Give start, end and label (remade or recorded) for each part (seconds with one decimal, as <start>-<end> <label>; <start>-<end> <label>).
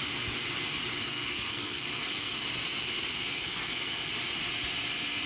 0.0-1.0 recorded; 1.0-2.4 remade; 2.4-3.1 recorded; 3.1-4.1 remade; 4.1-5.3 recorded